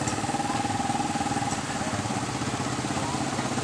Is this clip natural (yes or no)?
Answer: yes